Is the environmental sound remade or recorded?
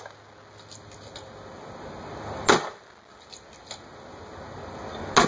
recorded